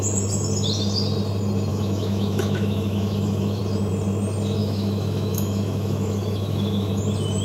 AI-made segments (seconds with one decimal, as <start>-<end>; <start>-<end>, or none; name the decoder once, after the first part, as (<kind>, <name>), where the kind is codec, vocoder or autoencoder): 1.7-3.6 (autoencoder, DAC-VAE); 4.6-7.0